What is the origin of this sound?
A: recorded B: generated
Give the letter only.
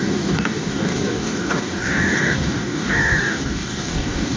B